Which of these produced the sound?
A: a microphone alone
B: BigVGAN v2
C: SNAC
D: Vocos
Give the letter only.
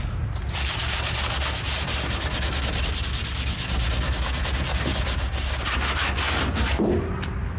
A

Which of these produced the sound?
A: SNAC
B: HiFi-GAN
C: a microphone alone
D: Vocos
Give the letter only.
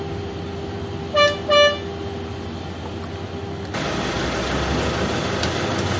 C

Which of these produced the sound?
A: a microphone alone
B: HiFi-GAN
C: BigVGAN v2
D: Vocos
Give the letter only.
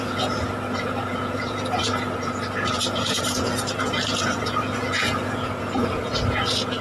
D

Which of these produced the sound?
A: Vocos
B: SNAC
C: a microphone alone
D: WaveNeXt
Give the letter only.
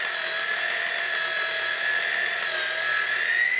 C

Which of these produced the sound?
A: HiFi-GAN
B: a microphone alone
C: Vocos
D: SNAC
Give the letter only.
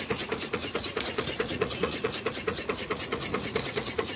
C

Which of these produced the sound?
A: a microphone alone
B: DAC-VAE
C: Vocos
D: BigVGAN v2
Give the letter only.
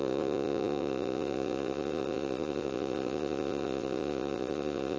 C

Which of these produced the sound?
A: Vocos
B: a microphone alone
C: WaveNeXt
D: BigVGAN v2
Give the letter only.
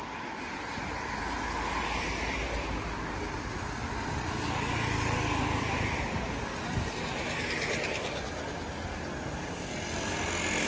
B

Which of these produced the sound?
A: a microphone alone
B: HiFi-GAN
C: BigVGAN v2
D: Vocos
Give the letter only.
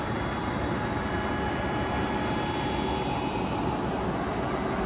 A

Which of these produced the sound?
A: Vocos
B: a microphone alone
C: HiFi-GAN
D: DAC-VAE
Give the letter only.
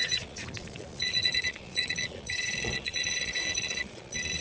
A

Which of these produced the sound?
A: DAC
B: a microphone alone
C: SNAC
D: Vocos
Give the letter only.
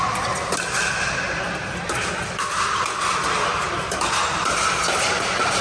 B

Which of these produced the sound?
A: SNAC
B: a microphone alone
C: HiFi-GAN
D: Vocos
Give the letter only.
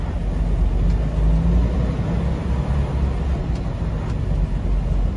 B